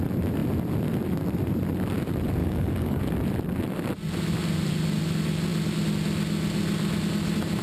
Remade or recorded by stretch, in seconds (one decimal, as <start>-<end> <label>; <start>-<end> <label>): 0.0-2.4 recorded; 2.4-3.0 remade; 3.0-7.6 recorded